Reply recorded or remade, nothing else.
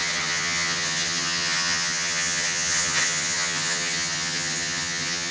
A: remade